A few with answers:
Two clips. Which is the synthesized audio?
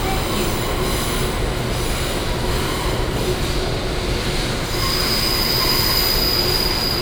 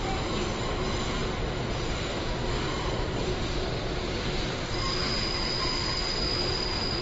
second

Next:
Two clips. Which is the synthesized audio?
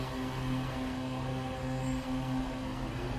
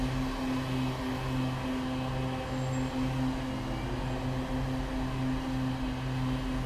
first